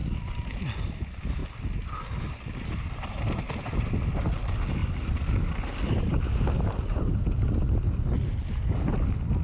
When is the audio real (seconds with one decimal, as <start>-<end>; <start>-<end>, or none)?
0.0-9.4